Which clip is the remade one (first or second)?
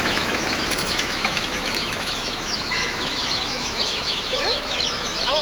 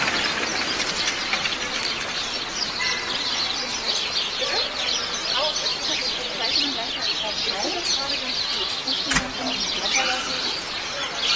first